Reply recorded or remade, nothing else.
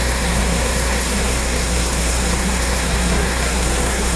remade